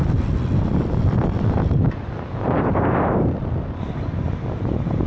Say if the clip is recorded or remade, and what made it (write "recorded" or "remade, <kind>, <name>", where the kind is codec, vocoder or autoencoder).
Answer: recorded